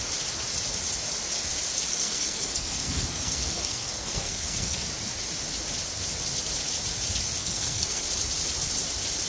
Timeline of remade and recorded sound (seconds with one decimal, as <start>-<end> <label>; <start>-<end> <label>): 0.0-1.9 recorded; 1.9-4.9 remade; 4.9-7.4 recorded; 7.4-8.0 remade; 8.0-9.3 recorded